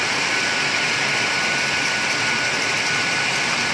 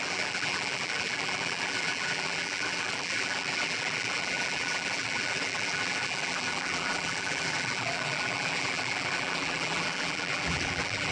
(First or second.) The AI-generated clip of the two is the second